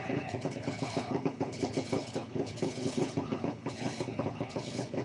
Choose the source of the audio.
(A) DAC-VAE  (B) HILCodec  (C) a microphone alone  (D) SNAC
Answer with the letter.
B